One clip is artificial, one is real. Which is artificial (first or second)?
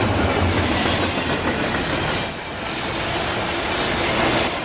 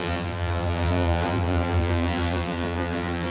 second